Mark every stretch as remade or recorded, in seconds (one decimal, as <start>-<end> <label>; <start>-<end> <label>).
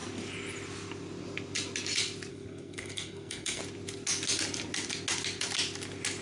0.0-2.3 recorded; 2.3-3.6 remade; 3.6-6.2 recorded